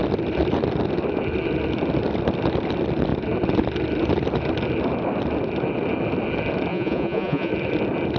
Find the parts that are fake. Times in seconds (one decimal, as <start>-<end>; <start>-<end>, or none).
6.7-7.5